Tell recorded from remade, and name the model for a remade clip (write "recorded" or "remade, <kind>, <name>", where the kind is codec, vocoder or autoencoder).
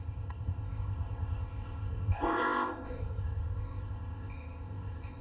remade, codec, ZipCodec